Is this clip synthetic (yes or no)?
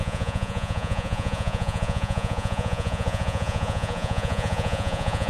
yes